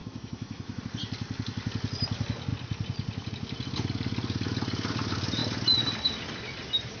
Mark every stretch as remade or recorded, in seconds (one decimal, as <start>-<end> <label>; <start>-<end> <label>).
0.0-0.8 remade; 0.8-7.0 recorded